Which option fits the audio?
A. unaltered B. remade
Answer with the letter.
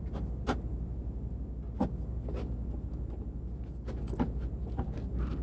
A